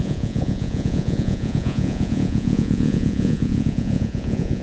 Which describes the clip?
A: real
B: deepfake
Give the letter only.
B